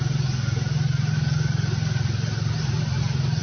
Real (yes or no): yes